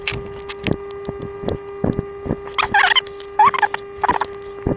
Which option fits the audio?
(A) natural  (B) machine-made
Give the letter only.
A